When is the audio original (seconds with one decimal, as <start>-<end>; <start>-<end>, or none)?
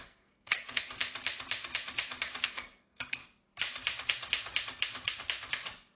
1.0-2.4; 3.2-6.0